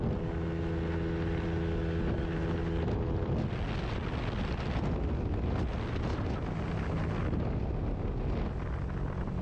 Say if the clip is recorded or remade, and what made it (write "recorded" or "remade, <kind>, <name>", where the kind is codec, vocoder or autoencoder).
recorded